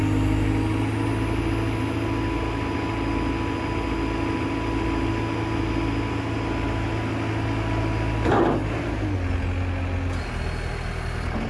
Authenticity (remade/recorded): recorded